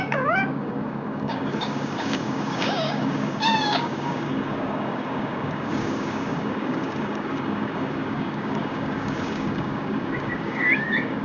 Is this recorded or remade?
remade